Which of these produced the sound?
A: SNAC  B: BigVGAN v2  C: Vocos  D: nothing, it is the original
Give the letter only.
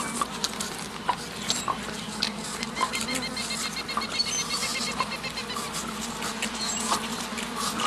D